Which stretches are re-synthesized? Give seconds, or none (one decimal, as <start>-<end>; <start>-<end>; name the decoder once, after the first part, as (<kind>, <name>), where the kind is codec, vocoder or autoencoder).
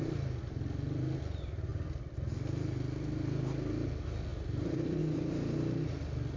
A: 1.7-2.2 (vocoder, BigVGAN v2); 4.3-5.0